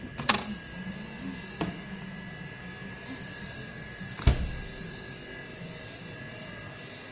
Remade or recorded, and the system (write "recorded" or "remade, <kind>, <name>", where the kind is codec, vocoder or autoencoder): recorded